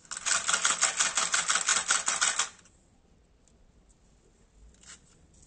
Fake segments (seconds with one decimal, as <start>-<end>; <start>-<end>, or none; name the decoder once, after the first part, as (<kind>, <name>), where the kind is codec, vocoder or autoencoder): none